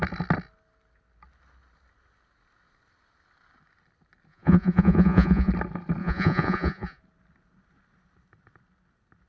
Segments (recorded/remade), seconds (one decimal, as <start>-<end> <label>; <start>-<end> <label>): 0.0-4.3 recorded; 4.3-5.5 remade; 5.5-6.0 recorded; 6.0-7.0 remade; 7.0-9.3 recorded